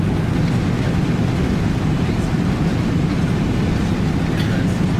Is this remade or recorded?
recorded